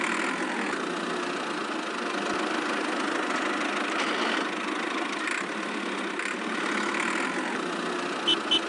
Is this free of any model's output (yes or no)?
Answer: yes